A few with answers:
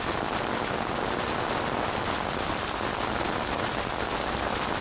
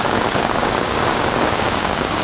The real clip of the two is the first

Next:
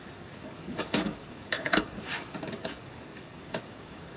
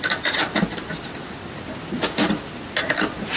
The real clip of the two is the second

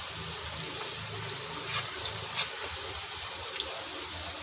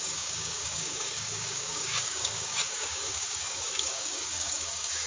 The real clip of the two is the first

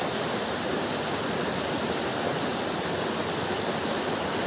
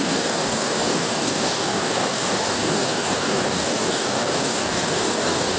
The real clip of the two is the first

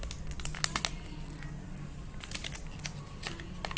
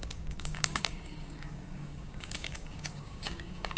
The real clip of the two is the first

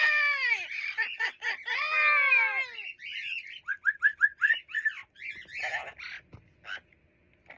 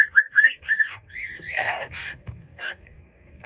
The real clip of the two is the first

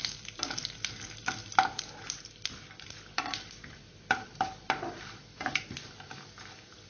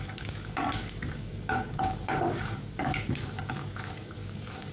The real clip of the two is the first